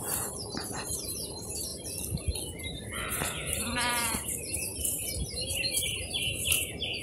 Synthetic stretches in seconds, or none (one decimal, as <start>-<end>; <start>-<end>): 0.0-1.7; 2.6-7.0